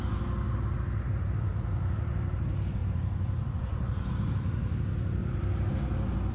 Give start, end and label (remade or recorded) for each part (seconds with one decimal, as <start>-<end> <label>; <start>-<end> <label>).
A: 0.0-1.5 recorded; 1.5-2.4 remade; 2.4-2.8 recorded; 2.8-4.1 remade; 4.1-5.2 recorded; 5.2-5.7 remade; 5.7-6.3 recorded